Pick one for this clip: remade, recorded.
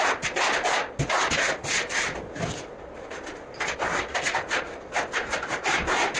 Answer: recorded